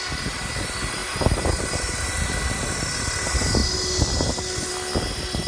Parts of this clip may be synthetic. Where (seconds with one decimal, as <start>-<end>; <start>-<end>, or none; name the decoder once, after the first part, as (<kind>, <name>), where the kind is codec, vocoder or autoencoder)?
none